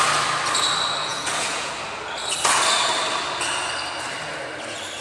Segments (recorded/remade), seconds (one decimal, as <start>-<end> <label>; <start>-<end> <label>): 0.0-1.0 recorded; 1.0-1.7 remade; 1.7-5.0 recorded